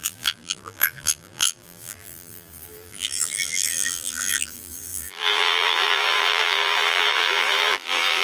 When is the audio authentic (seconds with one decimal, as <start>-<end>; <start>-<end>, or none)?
none